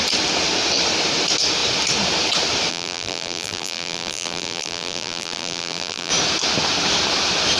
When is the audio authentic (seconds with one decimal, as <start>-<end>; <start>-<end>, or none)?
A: 0.0-2.7; 6.1-7.6